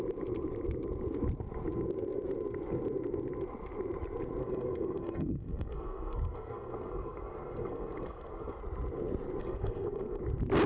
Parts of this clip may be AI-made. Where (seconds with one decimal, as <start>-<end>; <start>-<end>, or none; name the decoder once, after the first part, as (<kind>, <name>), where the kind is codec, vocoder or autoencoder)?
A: 4.4-8.6 (codec, SNAC); 9.4-10.2

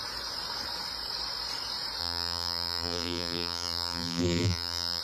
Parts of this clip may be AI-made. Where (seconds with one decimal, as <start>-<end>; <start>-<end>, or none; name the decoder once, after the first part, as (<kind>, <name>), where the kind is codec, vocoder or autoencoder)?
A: 2.0-5.0 (vocoder, BigVGAN v2)

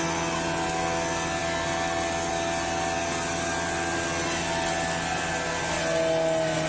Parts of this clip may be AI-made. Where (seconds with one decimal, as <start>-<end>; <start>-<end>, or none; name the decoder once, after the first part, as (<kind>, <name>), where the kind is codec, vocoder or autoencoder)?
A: none